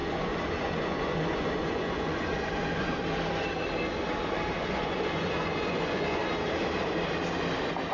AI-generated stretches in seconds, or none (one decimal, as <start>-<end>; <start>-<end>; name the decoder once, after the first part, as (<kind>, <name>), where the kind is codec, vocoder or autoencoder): 0.0-3.0 (vocoder, Vocos); 4.6-6.2